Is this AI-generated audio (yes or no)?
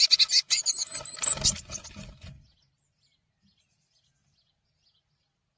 no